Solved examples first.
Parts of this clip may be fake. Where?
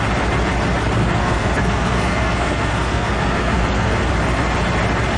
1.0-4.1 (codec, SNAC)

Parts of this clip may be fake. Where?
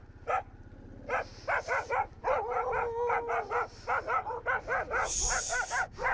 none